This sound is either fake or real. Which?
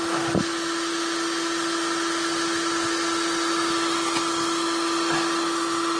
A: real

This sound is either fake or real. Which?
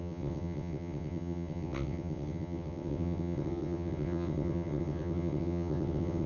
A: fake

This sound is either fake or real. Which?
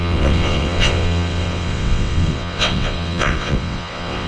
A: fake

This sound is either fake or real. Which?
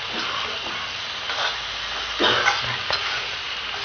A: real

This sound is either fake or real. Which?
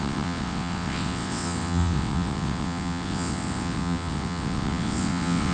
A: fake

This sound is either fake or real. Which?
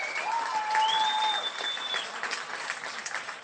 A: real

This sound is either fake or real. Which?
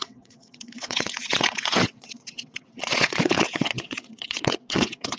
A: fake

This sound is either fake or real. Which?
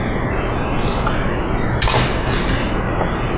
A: real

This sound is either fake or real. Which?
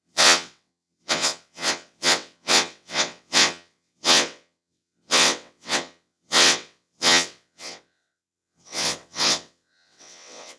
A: fake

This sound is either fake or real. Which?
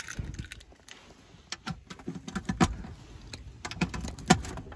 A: real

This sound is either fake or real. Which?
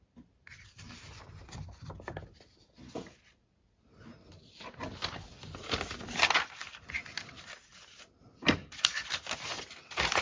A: real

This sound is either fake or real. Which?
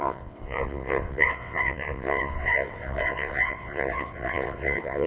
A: fake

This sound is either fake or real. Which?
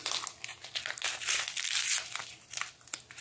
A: real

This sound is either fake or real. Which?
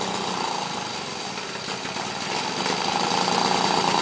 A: real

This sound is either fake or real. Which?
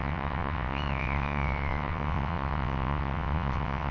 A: fake